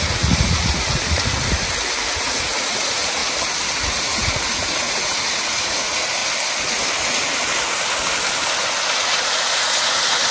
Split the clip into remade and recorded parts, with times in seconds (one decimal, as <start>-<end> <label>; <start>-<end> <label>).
0.0-1.3 remade; 1.3-2.2 recorded; 2.2-3.2 remade; 3.2-4.0 recorded; 4.0-6.2 remade; 6.2-8.9 recorded; 8.9-10.3 remade